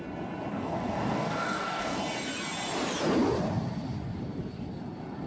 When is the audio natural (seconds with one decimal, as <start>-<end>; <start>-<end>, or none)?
0.0-0.5; 2.0-5.3